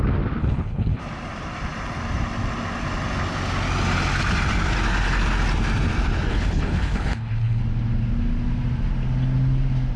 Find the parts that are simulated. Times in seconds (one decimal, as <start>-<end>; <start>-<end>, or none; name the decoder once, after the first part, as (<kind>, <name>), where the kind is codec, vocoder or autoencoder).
0.4-1.0 (codec, HILCodec); 6.3-7.6